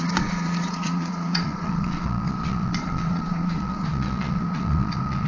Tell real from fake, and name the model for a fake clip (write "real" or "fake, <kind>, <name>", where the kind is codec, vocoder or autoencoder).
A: fake, vocoder, Vocos